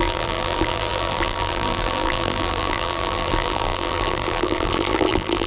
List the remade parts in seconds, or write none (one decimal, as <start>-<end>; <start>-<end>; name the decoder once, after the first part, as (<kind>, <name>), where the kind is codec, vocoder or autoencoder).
0.0-5.5 (vocoder, BigVGAN v2)